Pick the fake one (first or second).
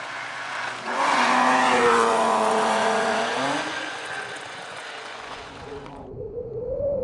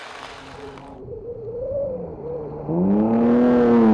first